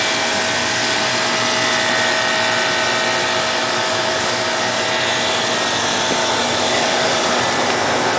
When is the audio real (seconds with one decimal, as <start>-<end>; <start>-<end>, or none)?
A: 0.0-0.6; 1.1-3.2; 4.8-6.2; 7.4-8.2